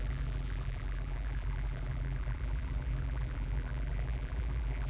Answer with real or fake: fake